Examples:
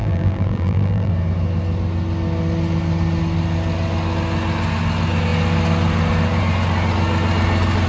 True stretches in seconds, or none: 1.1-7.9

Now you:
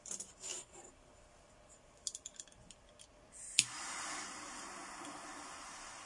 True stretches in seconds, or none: 0.0-0.5; 1.1-6.1

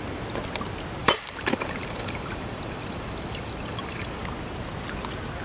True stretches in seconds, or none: 0.0-1.0; 4.2-5.4

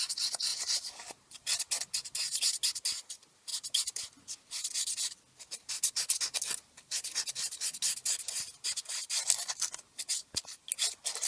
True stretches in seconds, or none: 0.0-0.5; 1.3-3.5; 4.0-11.3

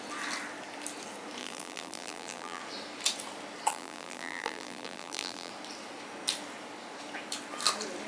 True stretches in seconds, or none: 0.0-1.4; 2.6-3.7; 5.5-8.1

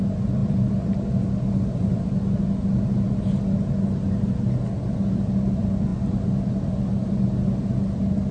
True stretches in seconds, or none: 0.0-8.3

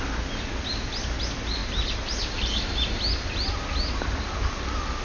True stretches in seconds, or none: 0.0-1.6; 2.4-5.0